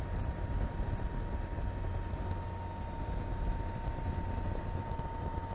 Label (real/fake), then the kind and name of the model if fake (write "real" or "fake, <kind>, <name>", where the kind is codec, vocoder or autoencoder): real